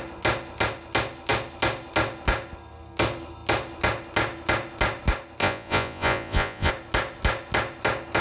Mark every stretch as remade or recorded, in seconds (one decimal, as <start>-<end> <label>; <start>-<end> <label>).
0.0-5.4 recorded; 5.4-6.7 remade; 6.7-8.2 recorded